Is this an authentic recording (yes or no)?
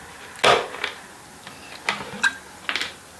yes